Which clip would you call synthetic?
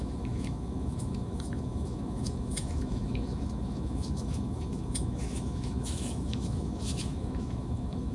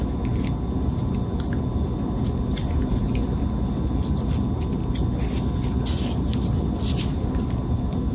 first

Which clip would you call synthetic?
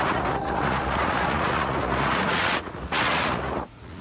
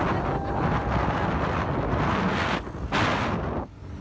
first